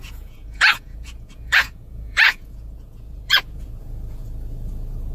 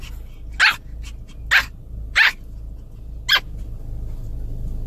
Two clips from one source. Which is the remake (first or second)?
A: first